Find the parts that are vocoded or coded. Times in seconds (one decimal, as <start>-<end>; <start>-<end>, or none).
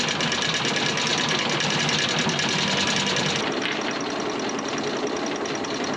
none